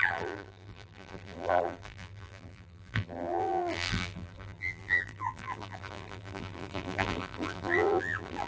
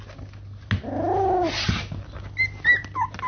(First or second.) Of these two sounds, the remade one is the first